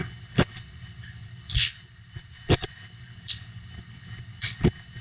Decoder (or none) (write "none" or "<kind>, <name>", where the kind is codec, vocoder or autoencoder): codec, HILCodec